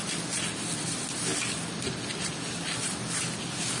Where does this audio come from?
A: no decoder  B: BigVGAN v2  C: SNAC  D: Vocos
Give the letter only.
A